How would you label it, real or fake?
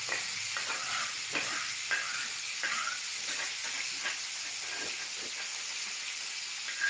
real